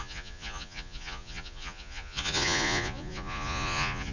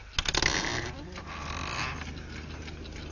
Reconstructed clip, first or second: first